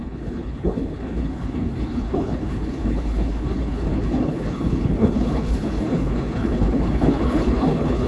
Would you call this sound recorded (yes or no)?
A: no